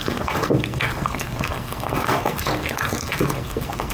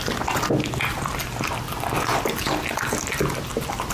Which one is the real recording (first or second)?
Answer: second